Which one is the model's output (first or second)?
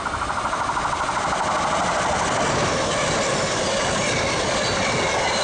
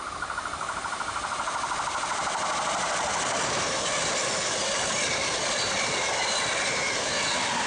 second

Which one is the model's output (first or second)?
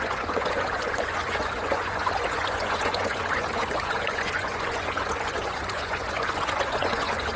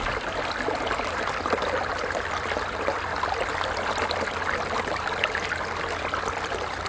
first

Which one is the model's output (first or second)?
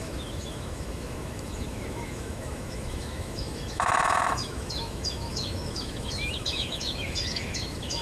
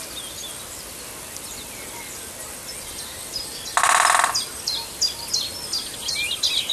first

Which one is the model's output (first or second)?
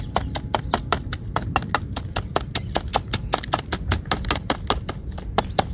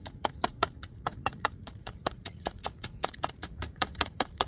second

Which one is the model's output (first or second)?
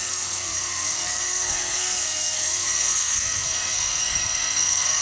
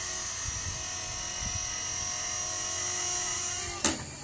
first